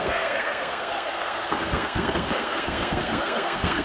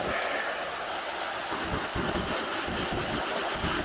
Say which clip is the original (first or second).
second